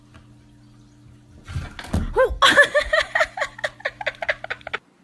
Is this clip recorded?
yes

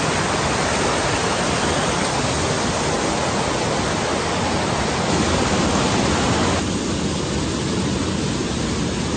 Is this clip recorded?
yes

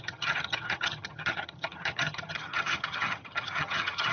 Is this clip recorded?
no